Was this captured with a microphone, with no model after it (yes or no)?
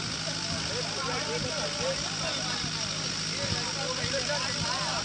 yes